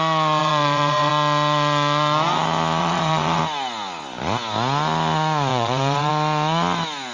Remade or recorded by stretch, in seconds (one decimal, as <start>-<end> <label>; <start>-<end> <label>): 0.0-0.4 recorded; 0.4-1.1 remade; 1.1-2.8 recorded; 2.8-3.4 remade; 3.4-5.5 recorded; 5.5-6.1 remade; 6.1-7.1 recorded